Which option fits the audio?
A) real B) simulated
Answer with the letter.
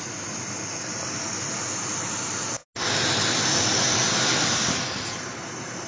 A